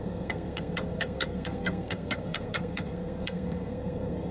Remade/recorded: remade